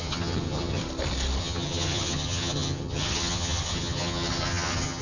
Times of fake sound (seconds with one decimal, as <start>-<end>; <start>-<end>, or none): 0.0-0.8; 1.4-5.0

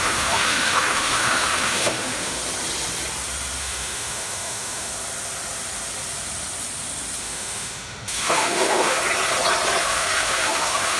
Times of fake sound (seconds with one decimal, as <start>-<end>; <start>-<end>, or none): 0.0-2.4; 3.6-4.9; 7.2-9.0; 9.8-11.0